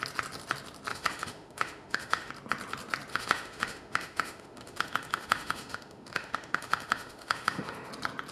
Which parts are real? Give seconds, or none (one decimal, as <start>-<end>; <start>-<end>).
0.0-0.9; 2.3-3.1; 7.9-8.3